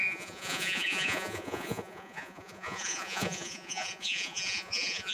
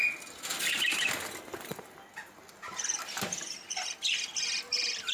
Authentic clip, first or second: second